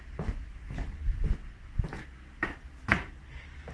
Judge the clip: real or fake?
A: real